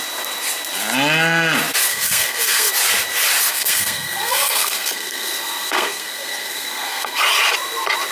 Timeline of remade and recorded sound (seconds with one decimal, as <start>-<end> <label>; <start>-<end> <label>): 0.0-1.9 recorded; 1.9-2.7 remade; 2.7-3.5 recorded; 3.5-7.2 remade; 7.2-8.1 recorded